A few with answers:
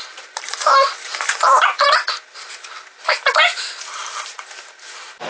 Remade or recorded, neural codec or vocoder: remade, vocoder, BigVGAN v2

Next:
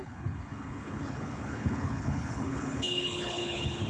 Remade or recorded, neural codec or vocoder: remade, codec, HILCodec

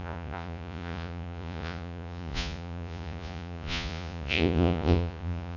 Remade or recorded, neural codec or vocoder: remade, vocoder, Vocos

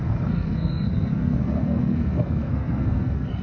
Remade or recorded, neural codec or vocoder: remade, codec, SNAC